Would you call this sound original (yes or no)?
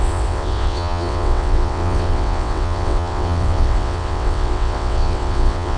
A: no